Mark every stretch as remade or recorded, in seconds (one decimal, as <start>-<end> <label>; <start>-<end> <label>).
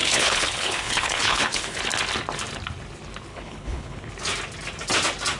0.0-1.8 remade; 1.8-3.3 recorded; 3.3-4.1 remade; 4.1-5.4 recorded